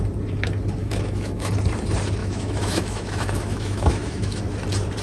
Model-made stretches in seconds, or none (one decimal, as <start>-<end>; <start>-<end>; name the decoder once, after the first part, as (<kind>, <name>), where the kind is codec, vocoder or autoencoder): 0.8-1.5 (autoencoder, DAC-VAE); 2.2-4.4

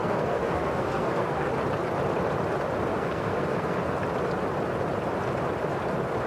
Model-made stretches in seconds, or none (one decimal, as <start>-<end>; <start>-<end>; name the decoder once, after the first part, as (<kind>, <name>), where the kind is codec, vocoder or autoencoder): 0.0-1.5 (codec, SNAC); 2.9-3.9

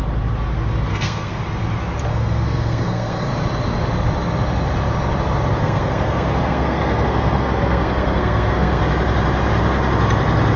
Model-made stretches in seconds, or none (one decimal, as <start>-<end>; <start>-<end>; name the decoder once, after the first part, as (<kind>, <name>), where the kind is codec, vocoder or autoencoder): 0.9-1.4 (codec, SNAC); 2.1-3.3; 5.6-8.8

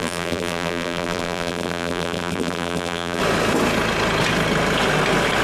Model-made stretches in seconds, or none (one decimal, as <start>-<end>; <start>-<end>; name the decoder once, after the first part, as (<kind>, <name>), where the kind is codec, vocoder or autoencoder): 0.0-3.2 (vocoder, BigVGAN v2)

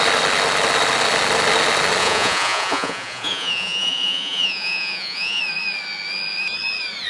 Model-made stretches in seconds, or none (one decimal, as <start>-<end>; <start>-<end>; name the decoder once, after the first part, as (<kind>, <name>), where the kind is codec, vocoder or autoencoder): 2.0-5.4 (vocoder, Vocos)

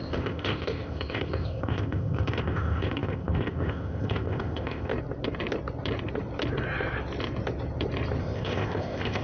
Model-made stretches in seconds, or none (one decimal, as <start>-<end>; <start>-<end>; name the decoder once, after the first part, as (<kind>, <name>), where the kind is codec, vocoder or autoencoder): 0.0-4.9 (codec, ZipCodec); 8.2-9.2